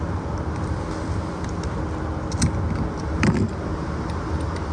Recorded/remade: recorded